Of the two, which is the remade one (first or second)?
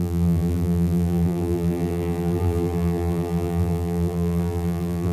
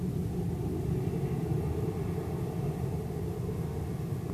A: first